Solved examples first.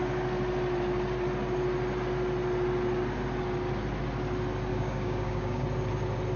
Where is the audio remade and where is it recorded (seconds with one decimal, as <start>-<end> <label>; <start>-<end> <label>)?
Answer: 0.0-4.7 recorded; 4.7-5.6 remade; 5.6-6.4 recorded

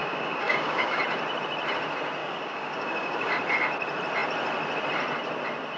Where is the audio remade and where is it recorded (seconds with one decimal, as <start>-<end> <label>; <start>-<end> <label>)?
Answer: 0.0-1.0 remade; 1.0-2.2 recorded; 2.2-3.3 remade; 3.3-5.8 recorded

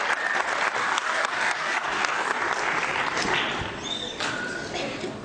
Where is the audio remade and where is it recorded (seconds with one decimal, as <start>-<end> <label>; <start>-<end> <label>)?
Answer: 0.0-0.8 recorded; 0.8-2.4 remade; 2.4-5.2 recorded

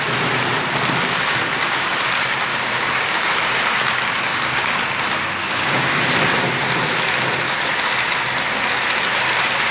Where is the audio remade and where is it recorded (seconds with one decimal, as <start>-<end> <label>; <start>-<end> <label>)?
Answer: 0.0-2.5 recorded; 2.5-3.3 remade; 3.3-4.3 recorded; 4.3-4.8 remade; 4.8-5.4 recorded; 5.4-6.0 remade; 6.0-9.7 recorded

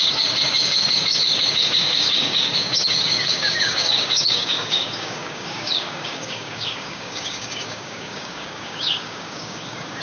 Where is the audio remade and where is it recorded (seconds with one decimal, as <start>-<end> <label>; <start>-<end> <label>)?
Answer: 0.0-10.0 remade

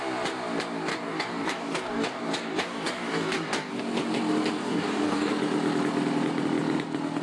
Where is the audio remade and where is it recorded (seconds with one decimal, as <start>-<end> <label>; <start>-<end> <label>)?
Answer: 0.0-0.9 recorded; 0.9-3.8 remade; 3.8-4.6 recorded; 4.6-5.3 remade; 5.3-7.2 recorded

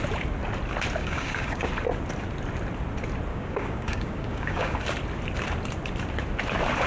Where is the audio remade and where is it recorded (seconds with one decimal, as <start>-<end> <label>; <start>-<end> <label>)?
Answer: 0.0-1.0 recorded; 1.0-1.7 remade; 1.7-3.3 recorded; 3.3-4.8 remade; 4.8-6.9 recorded